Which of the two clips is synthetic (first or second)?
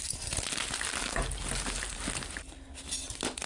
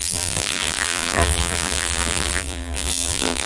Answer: second